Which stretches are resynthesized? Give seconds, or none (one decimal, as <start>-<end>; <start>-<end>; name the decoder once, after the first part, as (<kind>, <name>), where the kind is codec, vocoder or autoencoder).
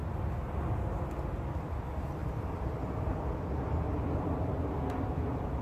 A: 2.2-5.6 (vocoder, BigVGAN v2)